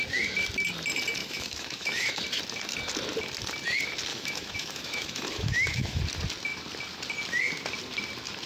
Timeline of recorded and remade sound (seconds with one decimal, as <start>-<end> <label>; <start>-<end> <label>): 0.0-1.2 recorded; 1.2-2.2 remade; 2.2-4.1 recorded; 4.1-6.0 remade; 6.0-8.5 recorded